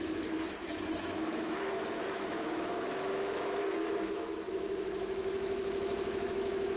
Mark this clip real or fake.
fake